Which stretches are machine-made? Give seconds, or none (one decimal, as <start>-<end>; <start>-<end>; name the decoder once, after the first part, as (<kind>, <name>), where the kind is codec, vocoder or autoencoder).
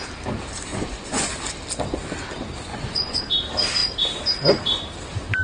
0.7-1.3 (vocoder, Vocos); 2.7-3.2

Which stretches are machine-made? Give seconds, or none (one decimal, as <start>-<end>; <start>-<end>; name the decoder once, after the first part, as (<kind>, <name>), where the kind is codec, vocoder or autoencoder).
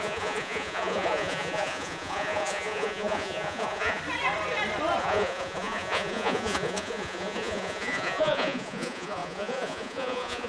0.0-4.0 (vocoder, Vocos); 5.0-10.5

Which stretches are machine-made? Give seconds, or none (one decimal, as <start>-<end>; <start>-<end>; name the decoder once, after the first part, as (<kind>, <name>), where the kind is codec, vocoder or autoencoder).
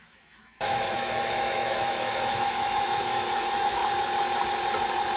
0.0-3.8 (autoencoder, DAC-VAE)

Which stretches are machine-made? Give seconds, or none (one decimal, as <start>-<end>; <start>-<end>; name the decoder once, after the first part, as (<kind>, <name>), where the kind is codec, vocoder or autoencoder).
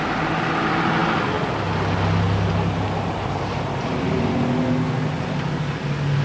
none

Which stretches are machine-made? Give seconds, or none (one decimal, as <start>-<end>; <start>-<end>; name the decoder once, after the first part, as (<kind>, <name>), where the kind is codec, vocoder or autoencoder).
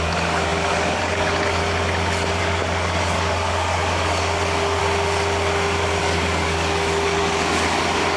0.0-1.6 (codec, DAC); 2.4-4.8; 6.0-8.2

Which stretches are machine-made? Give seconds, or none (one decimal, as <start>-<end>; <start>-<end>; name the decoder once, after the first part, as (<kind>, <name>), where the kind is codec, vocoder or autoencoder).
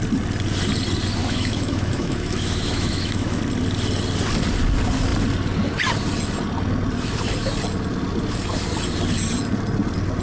1.2-3.4 (autoencoder, DAC-VAE)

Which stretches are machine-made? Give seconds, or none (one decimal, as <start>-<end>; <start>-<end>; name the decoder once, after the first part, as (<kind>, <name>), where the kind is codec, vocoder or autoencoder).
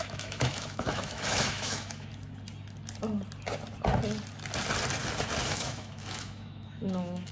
0.0-2.1 (autoencoder, DAC-VAE); 5.5-7.3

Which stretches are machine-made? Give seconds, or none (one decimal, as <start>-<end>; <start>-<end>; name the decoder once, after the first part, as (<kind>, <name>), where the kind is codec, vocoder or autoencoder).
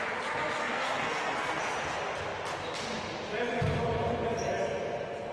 0.6-1.6 (codec, SNAC)